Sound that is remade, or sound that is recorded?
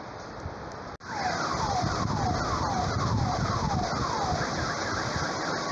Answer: recorded